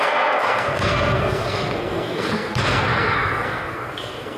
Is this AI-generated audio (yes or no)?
yes